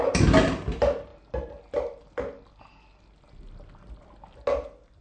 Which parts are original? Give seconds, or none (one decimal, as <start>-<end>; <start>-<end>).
0.0-5.0